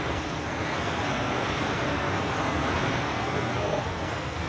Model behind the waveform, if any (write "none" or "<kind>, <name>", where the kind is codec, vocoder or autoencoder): codec, SNAC